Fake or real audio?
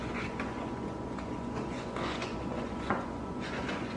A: fake